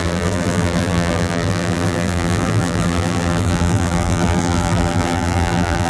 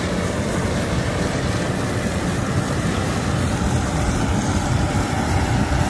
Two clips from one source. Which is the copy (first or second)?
first